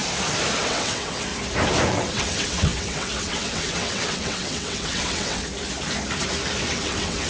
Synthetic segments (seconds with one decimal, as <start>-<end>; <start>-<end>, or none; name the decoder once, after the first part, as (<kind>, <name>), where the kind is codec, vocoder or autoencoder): 0.6-1.3 (vocoder, WaveNeXt); 1.9-5.4; 6.7-7.3